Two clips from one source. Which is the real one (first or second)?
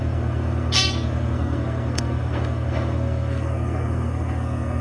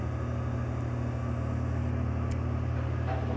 second